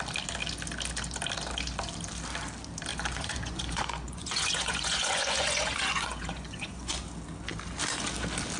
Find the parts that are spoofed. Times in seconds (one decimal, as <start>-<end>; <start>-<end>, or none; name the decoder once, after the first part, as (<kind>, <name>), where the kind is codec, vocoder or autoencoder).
2.9-7.0 (vocoder, Vocos)